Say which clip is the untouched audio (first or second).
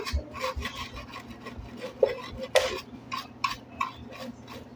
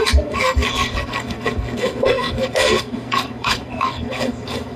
first